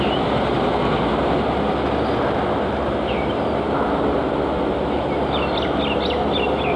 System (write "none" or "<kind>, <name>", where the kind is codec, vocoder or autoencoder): none